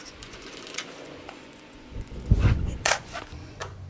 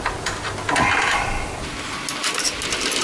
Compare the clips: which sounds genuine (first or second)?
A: second